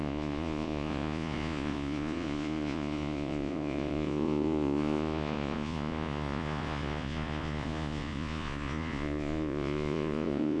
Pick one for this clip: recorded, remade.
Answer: remade